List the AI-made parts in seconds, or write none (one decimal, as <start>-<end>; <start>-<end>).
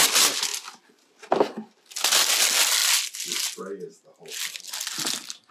none